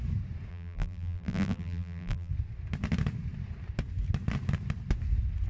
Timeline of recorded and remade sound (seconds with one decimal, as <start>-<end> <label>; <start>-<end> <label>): 0.0-0.5 recorded; 0.5-2.3 remade; 2.3-5.5 recorded